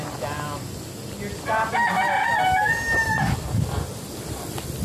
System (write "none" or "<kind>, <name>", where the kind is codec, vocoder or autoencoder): none